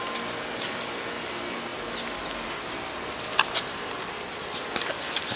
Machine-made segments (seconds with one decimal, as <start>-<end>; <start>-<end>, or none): none